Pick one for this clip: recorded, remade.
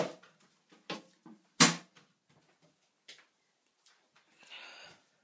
recorded